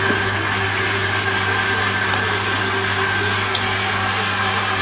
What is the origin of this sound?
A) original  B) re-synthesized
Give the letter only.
A